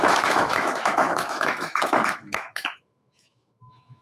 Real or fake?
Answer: fake